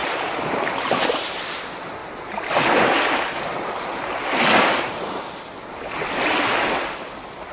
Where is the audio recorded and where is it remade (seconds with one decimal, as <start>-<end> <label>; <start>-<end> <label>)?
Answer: 0.0-1.6 remade; 1.6-7.5 recorded